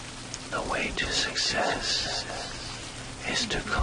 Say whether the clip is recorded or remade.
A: recorded